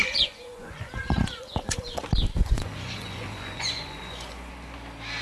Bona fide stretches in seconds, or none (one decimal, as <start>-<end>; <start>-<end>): 2.0-2.4; 4.5-5.2